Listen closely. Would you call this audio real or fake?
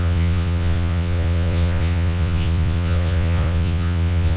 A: fake